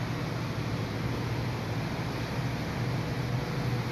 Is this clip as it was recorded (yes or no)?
yes